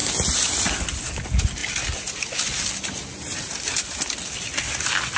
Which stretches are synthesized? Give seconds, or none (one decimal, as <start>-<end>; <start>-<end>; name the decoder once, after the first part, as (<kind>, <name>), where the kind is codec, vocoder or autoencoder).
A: none